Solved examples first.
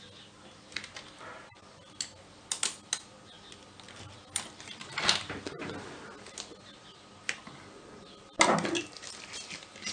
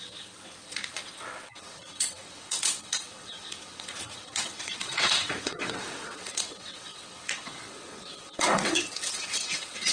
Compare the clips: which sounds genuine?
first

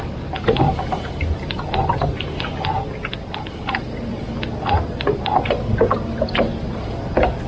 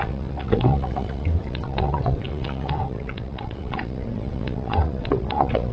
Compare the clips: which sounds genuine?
first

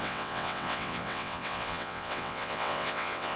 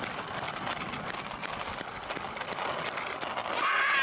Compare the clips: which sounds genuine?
second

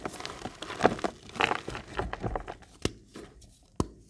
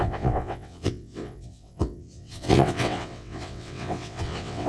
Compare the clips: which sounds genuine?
first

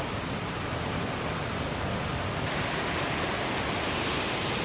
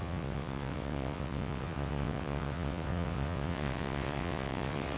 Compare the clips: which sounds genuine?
first